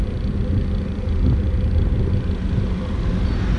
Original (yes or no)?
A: yes